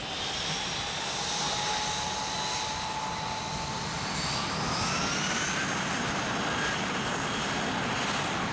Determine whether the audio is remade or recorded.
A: recorded